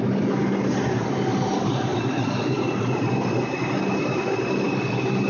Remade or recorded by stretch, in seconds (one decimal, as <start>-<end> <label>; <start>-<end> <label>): 0.0-5.3 recorded